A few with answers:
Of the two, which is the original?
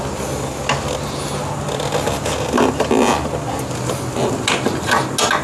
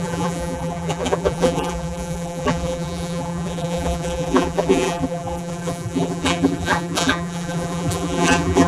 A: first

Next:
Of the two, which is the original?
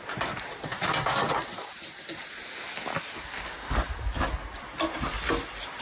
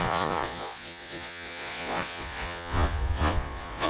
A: first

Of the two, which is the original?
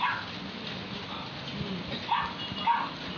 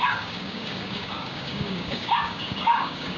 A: first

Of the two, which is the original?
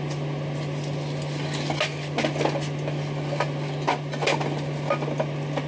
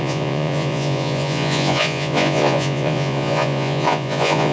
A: first